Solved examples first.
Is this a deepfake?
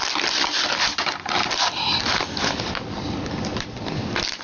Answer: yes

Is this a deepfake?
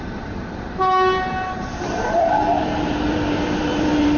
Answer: yes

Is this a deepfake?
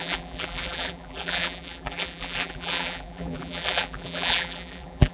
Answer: yes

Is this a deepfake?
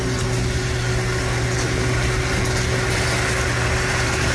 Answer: no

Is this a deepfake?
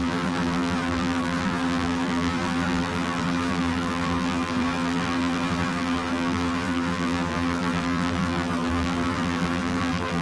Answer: yes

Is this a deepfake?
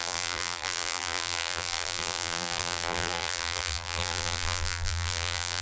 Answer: yes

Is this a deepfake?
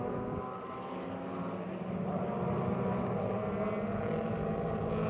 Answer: no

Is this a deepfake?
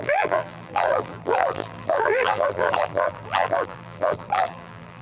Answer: yes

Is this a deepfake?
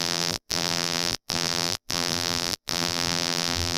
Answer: yes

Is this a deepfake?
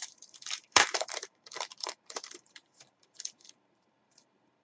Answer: yes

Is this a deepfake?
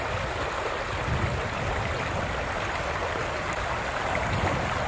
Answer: no